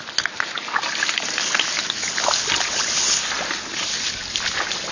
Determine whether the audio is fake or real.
real